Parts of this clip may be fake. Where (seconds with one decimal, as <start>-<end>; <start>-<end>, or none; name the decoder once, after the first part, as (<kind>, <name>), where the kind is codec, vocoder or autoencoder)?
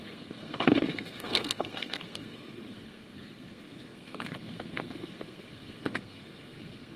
0.0-7.0 (codec, SNAC)